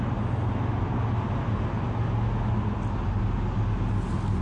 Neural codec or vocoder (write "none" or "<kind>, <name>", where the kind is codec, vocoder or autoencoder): none